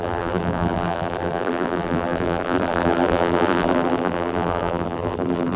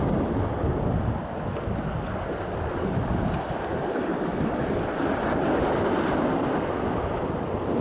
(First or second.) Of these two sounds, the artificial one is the first